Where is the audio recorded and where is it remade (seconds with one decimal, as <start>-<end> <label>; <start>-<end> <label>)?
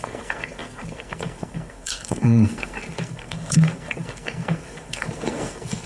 0.0-5.9 remade